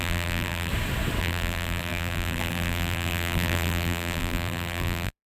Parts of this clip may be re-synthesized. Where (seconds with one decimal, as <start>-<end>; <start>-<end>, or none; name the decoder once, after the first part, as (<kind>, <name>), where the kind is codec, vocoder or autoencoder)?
0.0-0.7 (vocoder, BigVGAN v2); 1.2-5.3